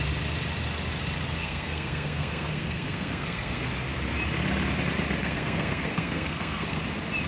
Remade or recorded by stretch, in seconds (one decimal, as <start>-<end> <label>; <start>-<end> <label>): 0.0-1.4 recorded; 1.4-3.7 remade; 3.7-5.2 recorded; 5.2-6.8 remade; 6.8-7.3 recorded

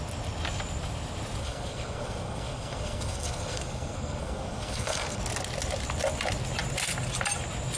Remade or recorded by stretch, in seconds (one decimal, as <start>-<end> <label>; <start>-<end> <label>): 0.0-1.4 recorded; 1.4-5.2 remade; 5.2-7.8 recorded

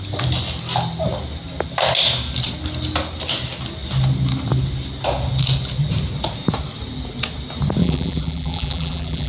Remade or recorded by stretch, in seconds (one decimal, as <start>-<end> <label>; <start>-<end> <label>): 0.0-7.8 recorded; 7.8-9.3 remade

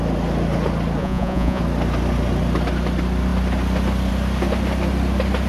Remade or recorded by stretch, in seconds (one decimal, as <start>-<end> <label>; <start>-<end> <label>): 0.0-1.0 recorded; 1.0-1.6 remade; 1.6-5.5 recorded

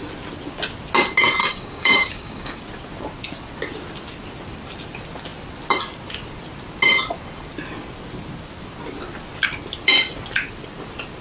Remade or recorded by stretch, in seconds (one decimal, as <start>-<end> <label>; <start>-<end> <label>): 0.0-1.4 recorded; 1.4-2.6 remade; 2.6-11.2 recorded

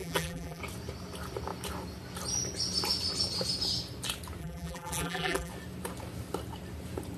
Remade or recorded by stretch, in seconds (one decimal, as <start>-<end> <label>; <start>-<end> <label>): 0.0-0.6 remade; 0.6-4.4 recorded; 4.4-5.5 remade; 5.5-7.2 recorded

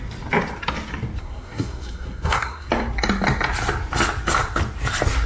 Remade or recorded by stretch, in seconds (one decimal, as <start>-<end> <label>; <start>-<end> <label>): 0.0-1.2 recorded; 1.2-2.7 remade; 2.7-5.3 recorded